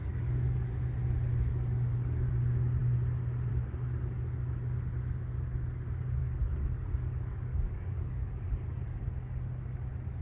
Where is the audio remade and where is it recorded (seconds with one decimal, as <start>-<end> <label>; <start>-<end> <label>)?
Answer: 0.0-0.7 remade; 0.7-1.5 recorded; 1.5-2.3 remade; 2.3-6.2 recorded; 6.2-9.1 remade; 9.1-10.2 recorded